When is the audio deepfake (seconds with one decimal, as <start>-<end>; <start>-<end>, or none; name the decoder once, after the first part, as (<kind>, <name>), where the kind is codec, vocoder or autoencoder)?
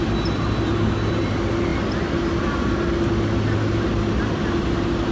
none